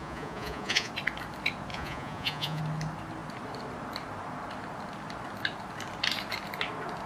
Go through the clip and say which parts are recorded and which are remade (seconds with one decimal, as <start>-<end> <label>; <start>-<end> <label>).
0.0-0.9 remade; 0.9-1.7 recorded; 1.7-2.6 remade; 2.6-7.1 recorded